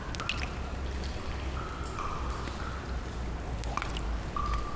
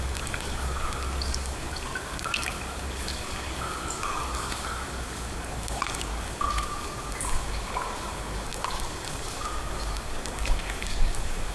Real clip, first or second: first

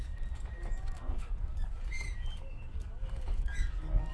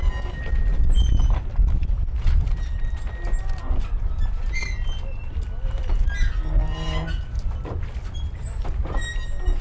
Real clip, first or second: second